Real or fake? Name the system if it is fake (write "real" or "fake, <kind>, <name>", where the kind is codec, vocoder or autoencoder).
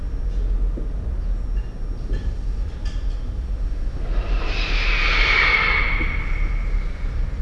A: real